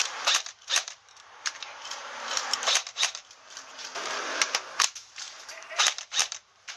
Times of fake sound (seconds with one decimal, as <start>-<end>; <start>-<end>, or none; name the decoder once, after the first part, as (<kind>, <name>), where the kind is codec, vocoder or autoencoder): 0.0-6.8 (vocoder, BigVGAN v2)